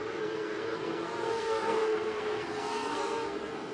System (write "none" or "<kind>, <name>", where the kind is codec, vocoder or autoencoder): codec, SNAC